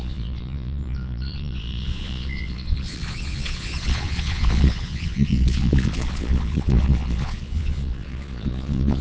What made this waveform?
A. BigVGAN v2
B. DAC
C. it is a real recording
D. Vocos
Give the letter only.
D